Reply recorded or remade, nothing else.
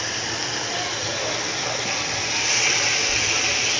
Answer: remade